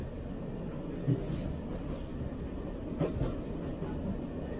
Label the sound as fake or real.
real